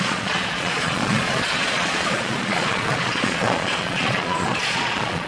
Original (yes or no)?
no